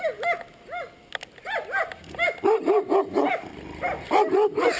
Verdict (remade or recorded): recorded